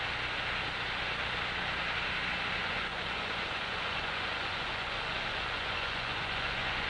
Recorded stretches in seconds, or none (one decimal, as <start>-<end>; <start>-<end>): 0.0-2.6